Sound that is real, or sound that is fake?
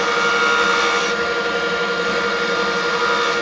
real